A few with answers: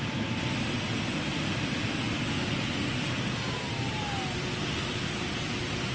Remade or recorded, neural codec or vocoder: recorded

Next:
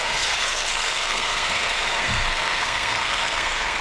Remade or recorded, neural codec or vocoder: remade, codec, SNAC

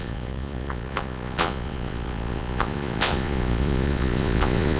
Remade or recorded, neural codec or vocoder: remade, vocoder, Vocos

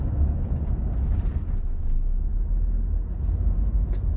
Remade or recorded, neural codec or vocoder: recorded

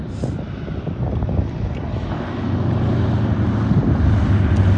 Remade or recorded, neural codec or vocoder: recorded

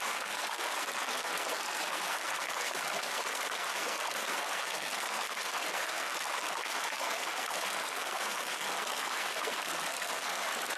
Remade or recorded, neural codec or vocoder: remade, codec, SNAC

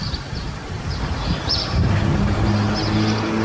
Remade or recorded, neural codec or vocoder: recorded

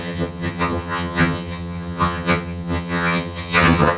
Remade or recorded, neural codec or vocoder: remade, vocoder, HiFi-GAN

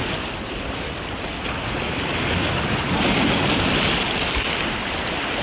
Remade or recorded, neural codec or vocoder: recorded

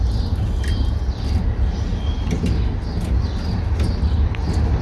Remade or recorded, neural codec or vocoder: recorded